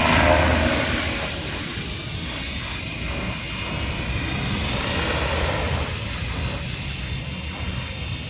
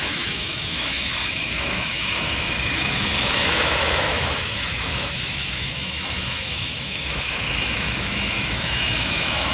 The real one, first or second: first